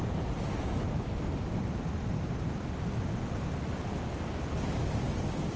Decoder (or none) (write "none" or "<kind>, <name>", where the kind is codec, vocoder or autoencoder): none